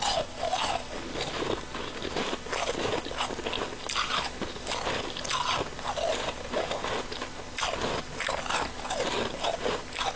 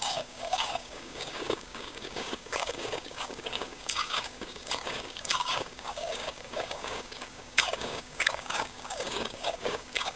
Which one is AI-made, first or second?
second